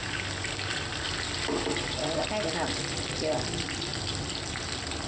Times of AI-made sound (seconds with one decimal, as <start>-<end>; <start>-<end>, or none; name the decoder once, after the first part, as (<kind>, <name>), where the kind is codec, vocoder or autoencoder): none